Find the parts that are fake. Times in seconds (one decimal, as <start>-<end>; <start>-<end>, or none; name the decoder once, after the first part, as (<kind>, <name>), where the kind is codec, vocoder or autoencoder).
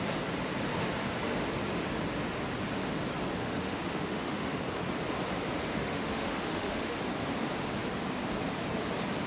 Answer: 3.4-4.6 (autoencoder, DAC-VAE); 5.7-7.0